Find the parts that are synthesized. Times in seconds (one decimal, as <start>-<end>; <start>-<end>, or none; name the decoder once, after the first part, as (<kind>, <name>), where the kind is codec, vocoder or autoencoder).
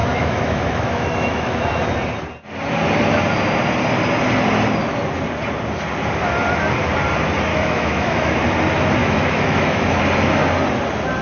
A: 0.0-1.6 (autoencoder, DAC-VAE); 7.5-8.4; 9.0-10.0